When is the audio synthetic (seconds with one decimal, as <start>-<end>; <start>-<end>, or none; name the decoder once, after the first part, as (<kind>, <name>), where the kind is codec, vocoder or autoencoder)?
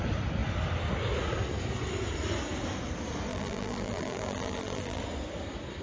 3.3-5.0 (vocoder, BigVGAN v2)